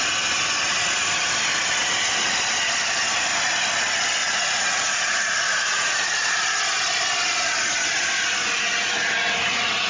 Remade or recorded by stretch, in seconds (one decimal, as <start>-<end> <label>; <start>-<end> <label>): 0.0-4.2 recorded; 4.2-6.1 remade; 6.1-9.9 recorded